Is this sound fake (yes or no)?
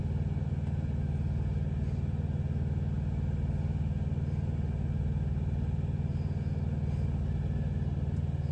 no